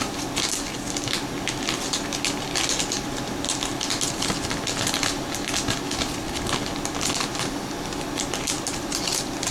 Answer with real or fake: real